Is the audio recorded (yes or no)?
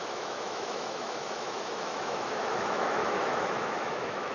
no